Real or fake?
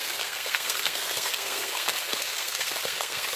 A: fake